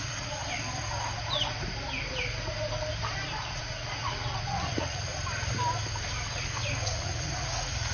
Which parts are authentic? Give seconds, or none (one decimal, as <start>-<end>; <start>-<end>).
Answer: 0.4-3.6; 5.1-6.3